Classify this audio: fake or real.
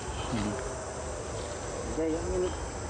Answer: real